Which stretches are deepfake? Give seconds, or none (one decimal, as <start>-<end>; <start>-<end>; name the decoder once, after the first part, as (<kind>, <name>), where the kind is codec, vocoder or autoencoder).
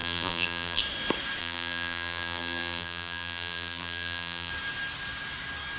0.0-0.8 (vocoder, BigVGAN v2); 1.4-4.5